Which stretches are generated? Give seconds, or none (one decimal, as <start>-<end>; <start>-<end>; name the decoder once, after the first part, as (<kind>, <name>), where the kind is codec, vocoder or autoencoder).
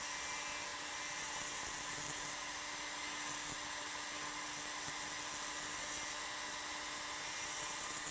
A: none